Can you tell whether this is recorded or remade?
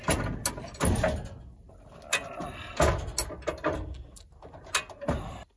recorded